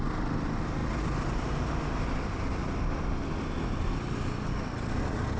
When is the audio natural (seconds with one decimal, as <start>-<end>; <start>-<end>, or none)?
0.0-5.4